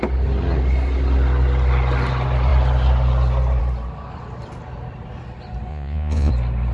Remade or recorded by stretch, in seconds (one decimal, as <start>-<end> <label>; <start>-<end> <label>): 0.0-5.7 recorded; 5.7-6.3 remade; 6.3-6.7 recorded